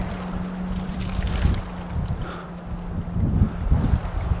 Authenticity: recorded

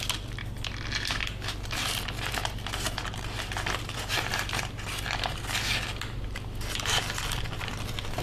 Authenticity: recorded